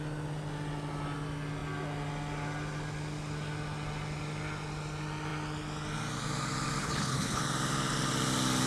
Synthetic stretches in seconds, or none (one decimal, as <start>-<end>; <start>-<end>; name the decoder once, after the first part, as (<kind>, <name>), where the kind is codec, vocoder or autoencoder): 6.8-7.4 (codec, HILCodec)